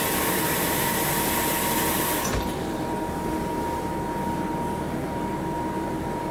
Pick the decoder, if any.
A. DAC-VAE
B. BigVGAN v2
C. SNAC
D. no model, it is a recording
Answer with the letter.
D